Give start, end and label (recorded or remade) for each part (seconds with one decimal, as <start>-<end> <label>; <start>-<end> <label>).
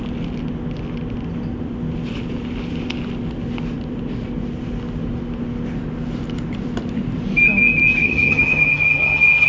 0.0-8.0 recorded; 8.0-9.5 remade